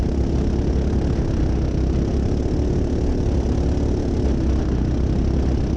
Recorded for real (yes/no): yes